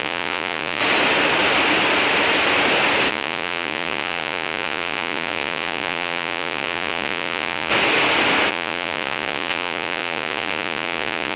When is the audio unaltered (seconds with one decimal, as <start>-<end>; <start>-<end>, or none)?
0.8-3.1; 7.7-8.5